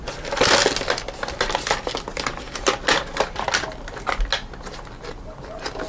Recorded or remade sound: recorded